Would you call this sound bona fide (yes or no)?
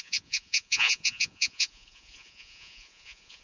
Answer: no